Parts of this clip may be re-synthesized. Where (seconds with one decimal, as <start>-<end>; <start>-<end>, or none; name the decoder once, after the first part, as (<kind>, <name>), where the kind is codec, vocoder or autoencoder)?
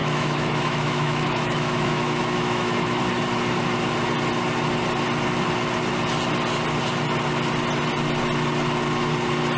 0.0-3.0 (autoencoder, DAC-VAE)